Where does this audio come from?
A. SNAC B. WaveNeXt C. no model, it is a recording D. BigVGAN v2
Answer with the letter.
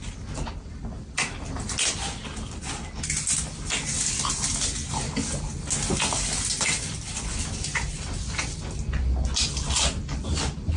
C